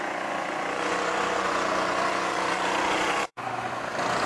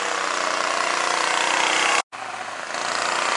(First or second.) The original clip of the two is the second